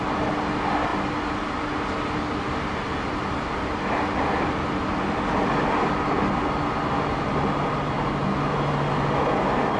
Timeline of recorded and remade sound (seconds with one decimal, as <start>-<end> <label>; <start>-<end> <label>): 0.0-9.8 recorded